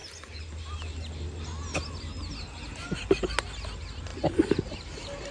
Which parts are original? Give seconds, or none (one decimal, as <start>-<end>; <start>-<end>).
0.0-5.3